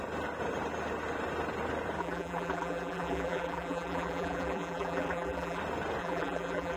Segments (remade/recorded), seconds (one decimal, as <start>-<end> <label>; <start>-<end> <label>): 0.0-2.0 recorded; 2.0-5.6 remade; 5.6-6.0 recorded; 6.0-6.8 remade